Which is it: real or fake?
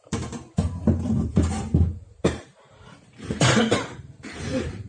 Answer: fake